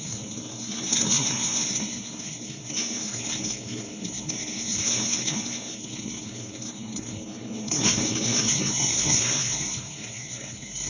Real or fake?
fake